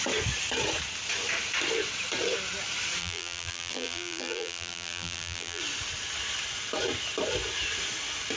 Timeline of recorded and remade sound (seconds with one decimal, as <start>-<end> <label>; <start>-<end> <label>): 0.0-3.0 recorded; 3.0-5.6 remade; 5.6-8.4 recorded